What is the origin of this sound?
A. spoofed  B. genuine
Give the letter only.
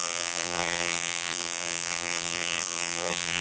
A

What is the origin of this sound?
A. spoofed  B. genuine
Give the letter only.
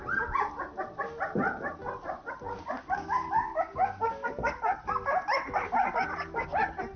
B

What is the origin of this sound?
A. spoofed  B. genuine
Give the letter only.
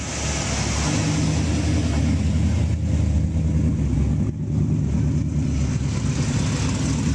B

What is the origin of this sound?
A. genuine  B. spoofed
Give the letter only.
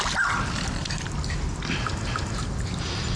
A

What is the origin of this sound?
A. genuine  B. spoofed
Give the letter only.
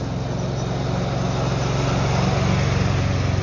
A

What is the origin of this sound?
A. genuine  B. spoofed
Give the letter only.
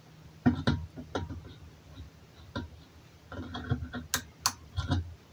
A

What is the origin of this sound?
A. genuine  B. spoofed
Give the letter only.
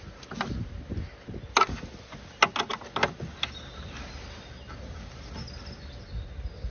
A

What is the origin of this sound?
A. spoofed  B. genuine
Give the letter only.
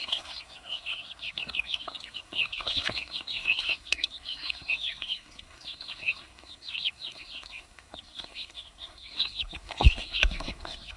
A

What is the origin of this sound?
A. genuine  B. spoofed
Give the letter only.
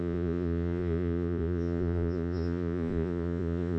B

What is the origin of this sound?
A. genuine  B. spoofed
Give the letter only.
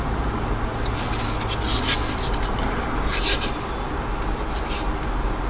A